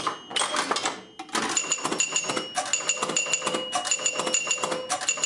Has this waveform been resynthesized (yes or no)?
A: no